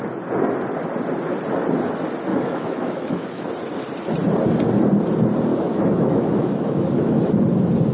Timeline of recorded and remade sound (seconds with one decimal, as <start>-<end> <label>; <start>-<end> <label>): 0.0-2.3 recorded; 2.3-3.5 remade; 3.5-5.5 recorded; 5.5-7.3 remade; 7.3-7.9 recorded